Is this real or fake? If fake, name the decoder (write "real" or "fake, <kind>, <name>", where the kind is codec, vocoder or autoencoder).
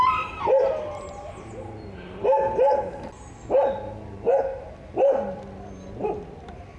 real